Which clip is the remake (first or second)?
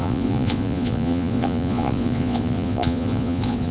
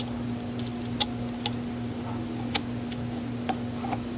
first